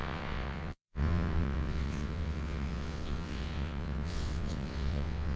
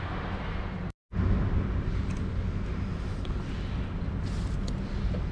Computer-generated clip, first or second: first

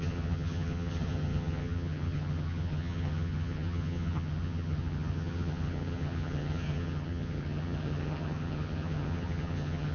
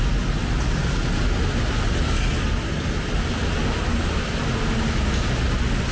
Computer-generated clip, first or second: first